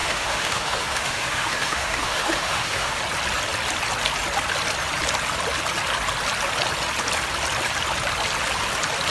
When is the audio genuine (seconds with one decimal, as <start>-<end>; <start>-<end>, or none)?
3.0-9.1